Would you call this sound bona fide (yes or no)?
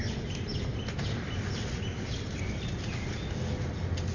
yes